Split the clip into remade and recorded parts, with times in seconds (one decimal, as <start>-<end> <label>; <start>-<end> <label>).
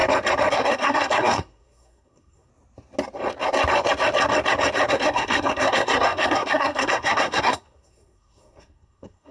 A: 0.0-0.5 recorded; 0.5-2.5 remade; 2.5-4.9 recorded; 4.9-9.3 remade